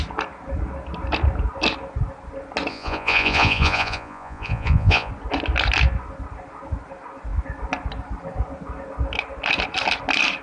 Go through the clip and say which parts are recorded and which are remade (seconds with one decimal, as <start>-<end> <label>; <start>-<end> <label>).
0.0-2.7 recorded; 2.7-5.1 remade; 5.1-10.4 recorded